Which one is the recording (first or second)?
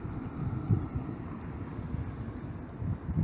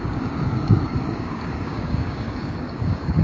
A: first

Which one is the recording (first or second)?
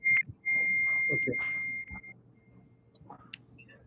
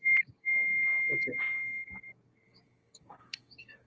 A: first